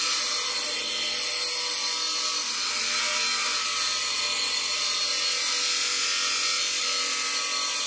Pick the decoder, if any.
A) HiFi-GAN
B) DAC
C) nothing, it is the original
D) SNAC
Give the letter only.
C